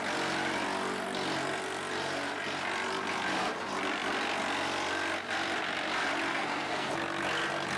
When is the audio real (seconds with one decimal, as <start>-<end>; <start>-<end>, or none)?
0.0-6.3; 6.9-7.8